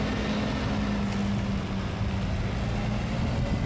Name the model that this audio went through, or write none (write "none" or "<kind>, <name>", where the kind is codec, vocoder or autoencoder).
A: none